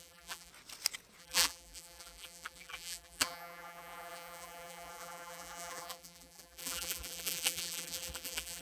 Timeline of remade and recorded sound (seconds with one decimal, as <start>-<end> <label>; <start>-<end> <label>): 0.0-0.5 remade; 0.5-1.2 recorded; 1.2-8.6 remade